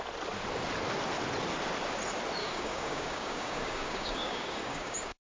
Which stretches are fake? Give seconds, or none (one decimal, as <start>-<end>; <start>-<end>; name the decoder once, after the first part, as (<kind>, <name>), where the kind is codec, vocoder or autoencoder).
2.4-5.3 (codec, DAC)